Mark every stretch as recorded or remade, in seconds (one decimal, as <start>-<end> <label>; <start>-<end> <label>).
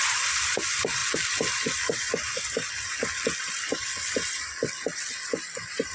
0.0-5.9 recorded